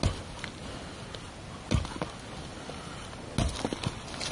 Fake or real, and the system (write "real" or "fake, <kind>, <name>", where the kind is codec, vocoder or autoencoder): real